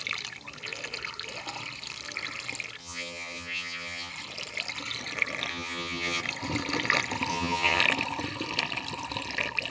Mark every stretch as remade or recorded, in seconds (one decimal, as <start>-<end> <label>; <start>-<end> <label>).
0.0-2.8 recorded; 2.8-4.1 remade; 4.1-5.5 recorded; 5.5-6.2 remade; 6.2-7.3 recorded; 7.3-7.8 remade; 7.8-9.7 recorded